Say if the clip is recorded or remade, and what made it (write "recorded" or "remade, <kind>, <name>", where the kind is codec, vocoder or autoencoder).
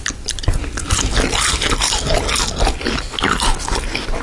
recorded